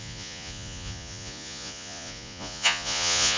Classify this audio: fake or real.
fake